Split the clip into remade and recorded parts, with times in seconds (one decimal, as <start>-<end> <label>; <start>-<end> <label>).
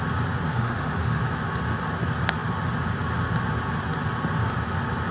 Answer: 0.0-0.5 recorded; 0.5-1.2 remade; 1.2-5.1 recorded